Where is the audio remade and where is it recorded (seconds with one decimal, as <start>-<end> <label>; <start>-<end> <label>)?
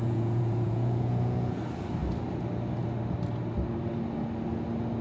0.0-1.6 remade; 1.6-5.0 recorded